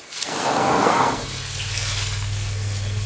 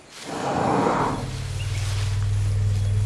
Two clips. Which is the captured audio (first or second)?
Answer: second